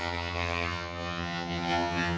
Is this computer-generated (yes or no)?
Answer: yes